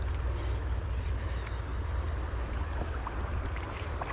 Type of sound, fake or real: real